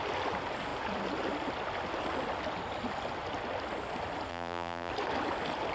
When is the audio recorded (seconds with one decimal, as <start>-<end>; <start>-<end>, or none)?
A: 0.0-4.3; 4.9-5.7